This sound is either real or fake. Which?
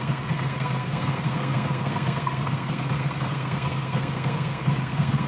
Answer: fake